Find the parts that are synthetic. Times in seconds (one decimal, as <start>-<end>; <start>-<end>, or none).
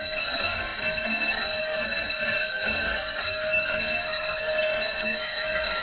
0.0-5.8